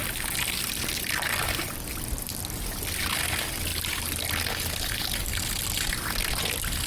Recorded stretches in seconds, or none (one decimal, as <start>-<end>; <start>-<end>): 0.0-6.9